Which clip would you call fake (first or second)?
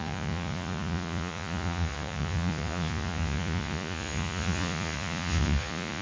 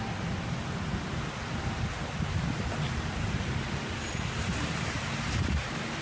first